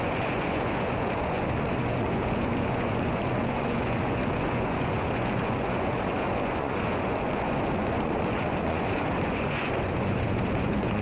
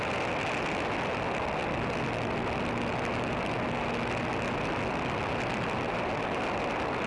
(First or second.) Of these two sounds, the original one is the second